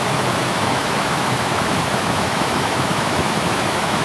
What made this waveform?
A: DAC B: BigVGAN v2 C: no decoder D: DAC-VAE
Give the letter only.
D